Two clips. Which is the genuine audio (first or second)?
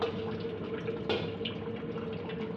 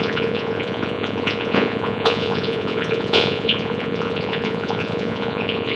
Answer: first